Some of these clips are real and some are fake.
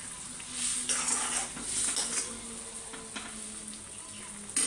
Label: real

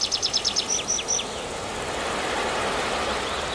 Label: real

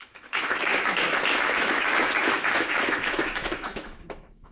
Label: fake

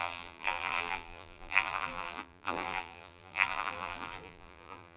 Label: fake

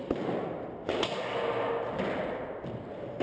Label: real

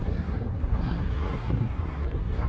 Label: fake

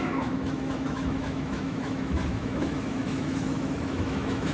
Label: fake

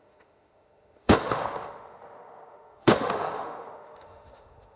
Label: fake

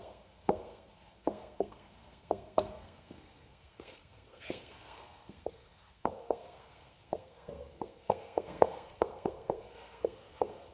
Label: fake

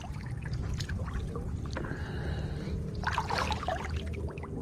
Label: real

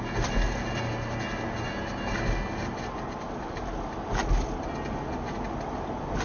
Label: real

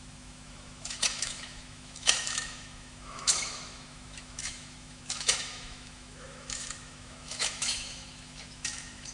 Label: fake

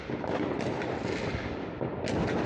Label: real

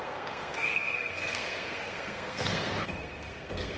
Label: fake